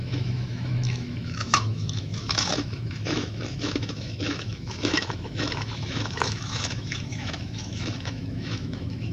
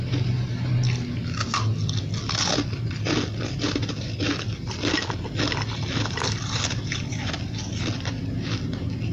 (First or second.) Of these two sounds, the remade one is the first